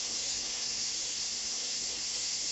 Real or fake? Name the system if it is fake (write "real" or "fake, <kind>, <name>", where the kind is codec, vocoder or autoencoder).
fake, codec, SNAC